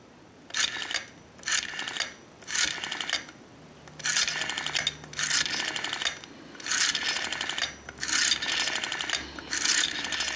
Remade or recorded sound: recorded